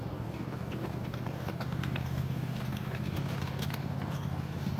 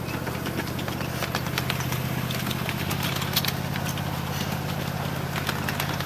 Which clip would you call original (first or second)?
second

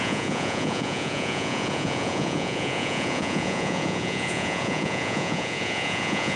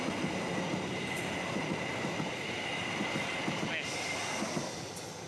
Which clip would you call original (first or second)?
second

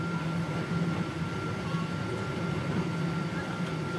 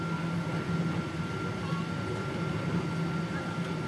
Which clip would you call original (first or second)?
second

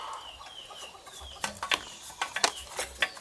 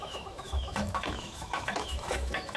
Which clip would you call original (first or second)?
first